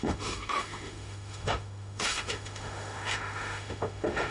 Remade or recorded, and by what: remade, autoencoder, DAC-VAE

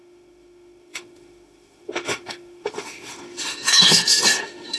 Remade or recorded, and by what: remade, autoencoder, DAC-VAE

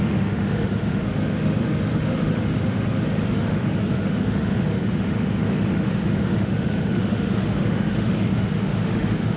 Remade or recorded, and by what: remade, autoencoder, DAC-VAE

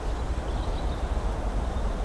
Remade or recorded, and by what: recorded